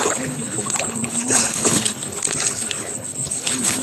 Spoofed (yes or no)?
yes